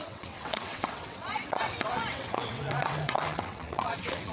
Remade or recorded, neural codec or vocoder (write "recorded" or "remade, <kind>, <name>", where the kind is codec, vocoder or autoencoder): remade, vocoder, WaveNeXt